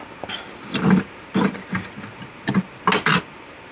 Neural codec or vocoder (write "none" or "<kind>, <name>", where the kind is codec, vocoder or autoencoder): none